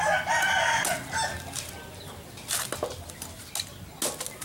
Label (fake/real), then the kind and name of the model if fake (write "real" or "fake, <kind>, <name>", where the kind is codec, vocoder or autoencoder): real